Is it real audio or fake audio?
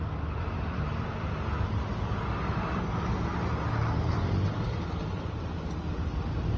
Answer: real